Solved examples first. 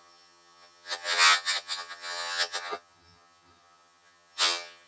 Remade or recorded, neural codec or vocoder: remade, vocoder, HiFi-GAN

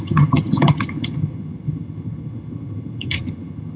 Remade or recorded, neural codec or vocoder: remade, vocoder, HiFi-GAN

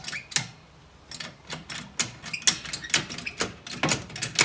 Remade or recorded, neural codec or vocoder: recorded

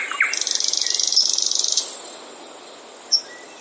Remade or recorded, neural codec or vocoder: recorded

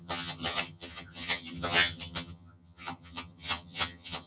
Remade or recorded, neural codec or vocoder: remade, vocoder, HiFi-GAN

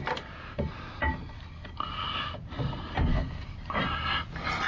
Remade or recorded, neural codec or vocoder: recorded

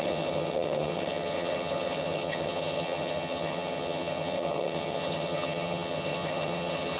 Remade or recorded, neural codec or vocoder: remade, vocoder, HiFi-GAN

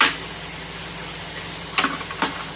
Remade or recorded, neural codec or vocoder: recorded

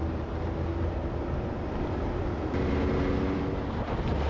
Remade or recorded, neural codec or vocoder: recorded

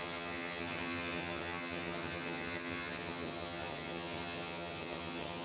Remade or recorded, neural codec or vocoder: remade, vocoder, HiFi-GAN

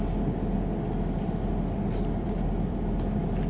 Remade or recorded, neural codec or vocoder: recorded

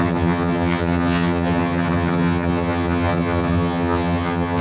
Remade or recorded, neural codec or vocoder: remade, vocoder, HiFi-GAN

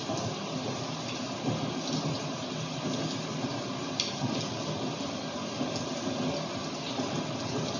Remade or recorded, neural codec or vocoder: recorded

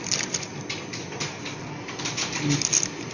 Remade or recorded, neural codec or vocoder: recorded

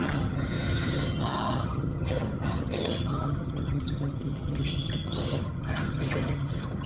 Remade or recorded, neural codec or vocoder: remade, vocoder, HiFi-GAN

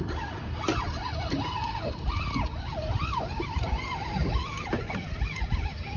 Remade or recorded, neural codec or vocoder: recorded